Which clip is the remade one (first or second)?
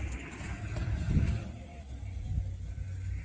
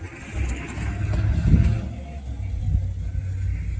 first